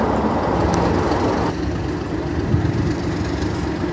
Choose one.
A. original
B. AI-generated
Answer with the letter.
A